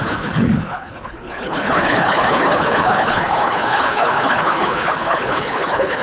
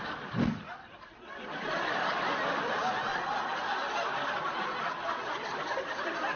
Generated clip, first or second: first